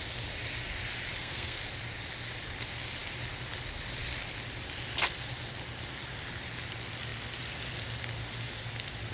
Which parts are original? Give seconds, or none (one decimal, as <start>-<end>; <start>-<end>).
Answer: 0.0-1.1; 1.6-9.1